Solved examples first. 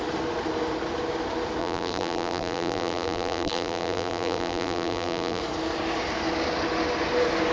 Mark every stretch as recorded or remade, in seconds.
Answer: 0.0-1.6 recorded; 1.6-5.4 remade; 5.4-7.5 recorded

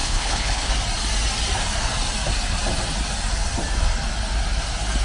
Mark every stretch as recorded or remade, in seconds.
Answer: 0.0-0.7 remade; 0.7-5.0 recorded

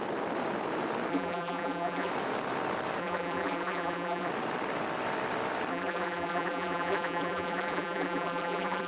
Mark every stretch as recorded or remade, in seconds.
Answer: 0.0-1.1 recorded; 1.1-2.1 remade; 2.1-3.0 recorded; 3.0-4.3 remade; 4.3-5.7 recorded; 5.7-8.9 remade

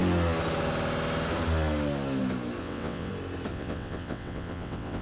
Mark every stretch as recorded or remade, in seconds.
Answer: 0.0-2.6 recorded; 2.6-3.1 remade; 3.1-3.5 recorded; 3.5-5.0 remade

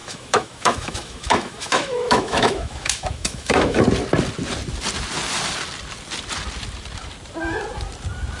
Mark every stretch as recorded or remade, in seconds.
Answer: 0.0-3.8 remade; 3.8-8.4 recorded

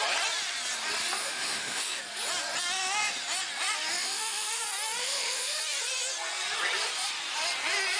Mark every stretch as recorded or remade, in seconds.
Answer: 0.0-1.2 recorded; 1.2-2.0 remade; 2.0-4.0 recorded; 4.0-4.6 remade; 4.6-5.0 recorded; 5.0-5.6 remade; 5.6-8.0 recorded